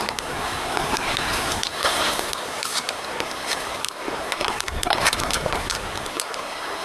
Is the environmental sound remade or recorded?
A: remade